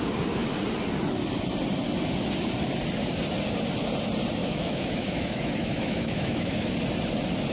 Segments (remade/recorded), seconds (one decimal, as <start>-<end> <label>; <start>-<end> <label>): 0.0-4.4 recorded; 4.4-6.7 remade; 6.7-7.5 recorded